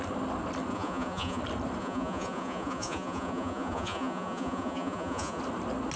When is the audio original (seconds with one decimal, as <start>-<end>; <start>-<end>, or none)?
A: 0.0-0.7; 1.4-1.8; 5.4-6.0